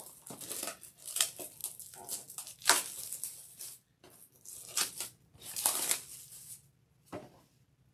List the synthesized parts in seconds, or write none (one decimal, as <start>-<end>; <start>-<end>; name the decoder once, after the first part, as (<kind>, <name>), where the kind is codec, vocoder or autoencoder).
none